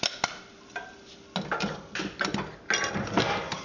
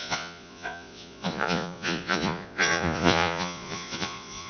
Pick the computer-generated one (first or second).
second